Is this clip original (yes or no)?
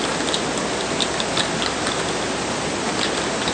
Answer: yes